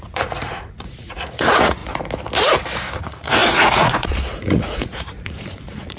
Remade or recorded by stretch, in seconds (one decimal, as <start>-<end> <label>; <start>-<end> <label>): 0.0-1.8 remade; 1.8-3.0 recorded; 3.0-6.0 remade